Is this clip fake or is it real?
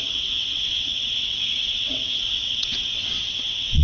fake